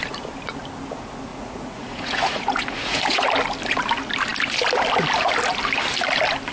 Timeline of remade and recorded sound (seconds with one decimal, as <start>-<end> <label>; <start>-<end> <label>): 0.0-1.3 recorded; 1.3-3.3 remade; 3.3-6.5 recorded